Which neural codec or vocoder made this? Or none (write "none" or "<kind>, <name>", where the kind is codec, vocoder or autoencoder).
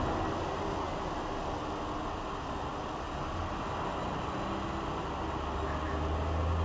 none